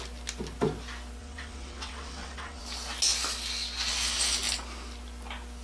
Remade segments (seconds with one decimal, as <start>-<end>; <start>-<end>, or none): 1.2-2.6